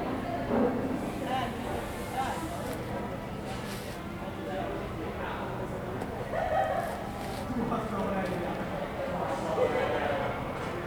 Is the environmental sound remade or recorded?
recorded